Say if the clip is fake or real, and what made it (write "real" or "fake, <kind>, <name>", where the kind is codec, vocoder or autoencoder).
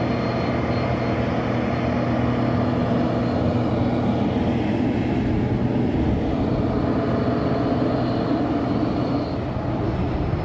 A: real